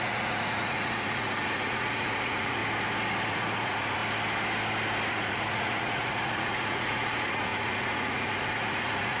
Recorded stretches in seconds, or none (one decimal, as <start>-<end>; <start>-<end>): 2.6-3.3; 4.0-5.1